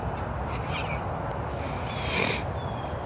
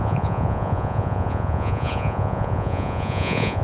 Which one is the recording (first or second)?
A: first